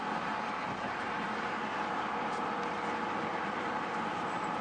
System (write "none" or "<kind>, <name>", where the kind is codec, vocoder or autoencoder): none